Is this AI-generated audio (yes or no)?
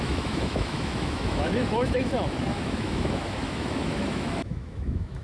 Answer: yes